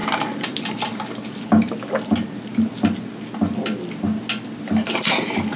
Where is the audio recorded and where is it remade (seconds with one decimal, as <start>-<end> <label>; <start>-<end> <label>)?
0.0-5.6 recorded